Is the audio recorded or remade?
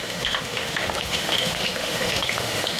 remade